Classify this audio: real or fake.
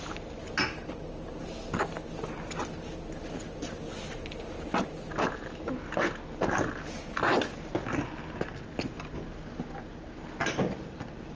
real